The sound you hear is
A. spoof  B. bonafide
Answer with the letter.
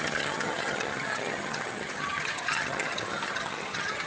A